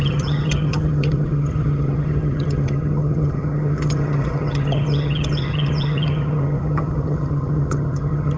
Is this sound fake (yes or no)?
yes